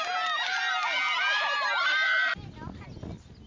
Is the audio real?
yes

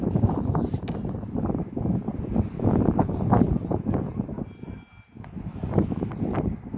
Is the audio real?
yes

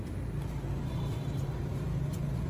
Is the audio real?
no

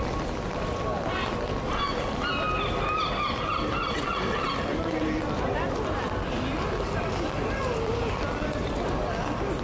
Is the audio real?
yes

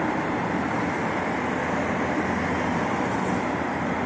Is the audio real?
yes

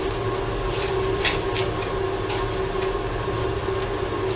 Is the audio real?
yes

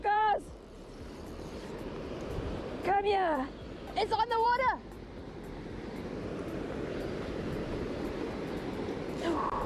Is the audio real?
no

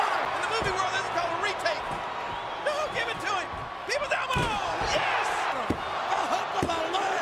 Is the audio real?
yes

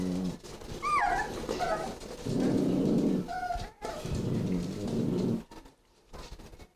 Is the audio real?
yes